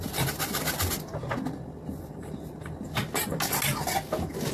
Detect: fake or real real